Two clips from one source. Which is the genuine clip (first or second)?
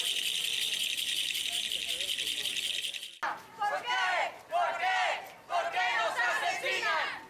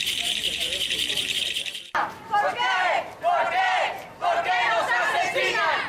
first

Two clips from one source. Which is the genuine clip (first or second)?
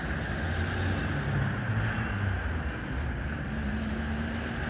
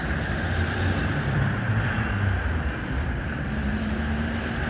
first